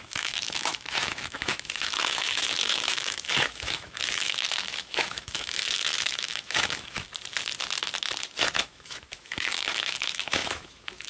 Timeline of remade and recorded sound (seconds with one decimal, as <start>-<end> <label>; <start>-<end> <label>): 0.0-7.1 remade; 7.1-8.6 recorded; 8.6-11.1 remade